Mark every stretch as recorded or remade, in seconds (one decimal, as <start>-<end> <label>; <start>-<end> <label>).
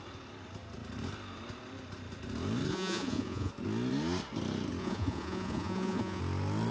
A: 0.0-2.7 recorded; 2.7-3.5 remade; 3.5-4.8 recorded; 4.8-6.2 remade; 6.2-6.7 recorded